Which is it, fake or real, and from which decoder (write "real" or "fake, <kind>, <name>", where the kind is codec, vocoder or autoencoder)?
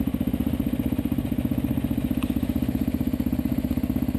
real